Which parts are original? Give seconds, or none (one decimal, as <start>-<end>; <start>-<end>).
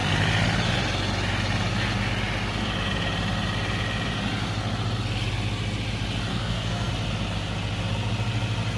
0.0-6.3; 6.9-8.8